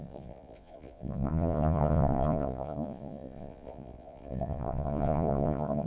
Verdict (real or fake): fake